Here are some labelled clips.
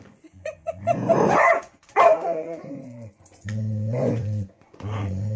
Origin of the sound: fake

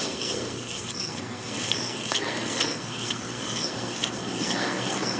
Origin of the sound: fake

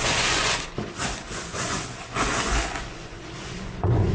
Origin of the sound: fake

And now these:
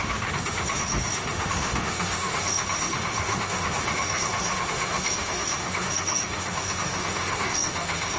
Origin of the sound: fake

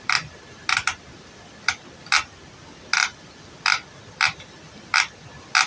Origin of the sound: real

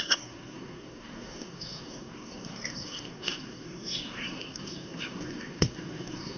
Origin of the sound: fake